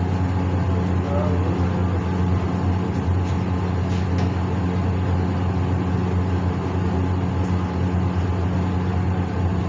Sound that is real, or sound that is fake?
real